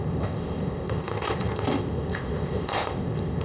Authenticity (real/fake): fake